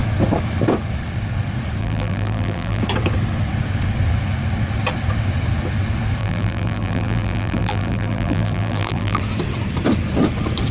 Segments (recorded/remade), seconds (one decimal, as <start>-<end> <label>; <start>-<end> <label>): 0.0-1.8 recorded; 1.8-2.8 remade; 2.8-6.2 recorded; 6.2-9.2 remade; 9.2-10.7 recorded